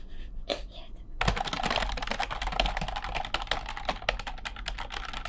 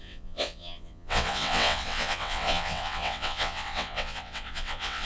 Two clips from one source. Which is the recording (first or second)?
first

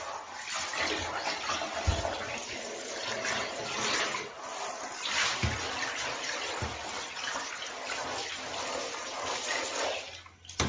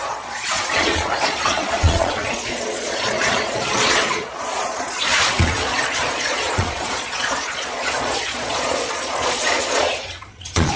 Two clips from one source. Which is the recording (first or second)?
first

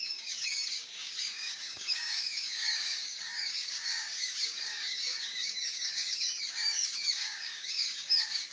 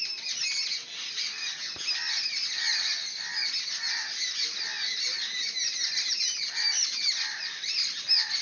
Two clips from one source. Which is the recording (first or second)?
second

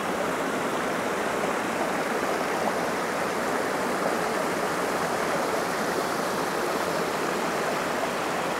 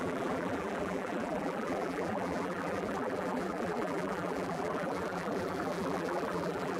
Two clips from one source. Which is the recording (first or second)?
first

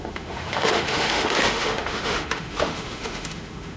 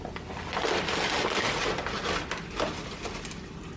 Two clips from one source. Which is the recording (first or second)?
second